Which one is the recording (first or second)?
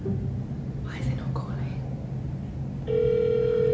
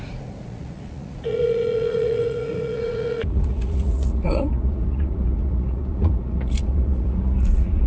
first